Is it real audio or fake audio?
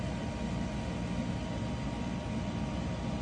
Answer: real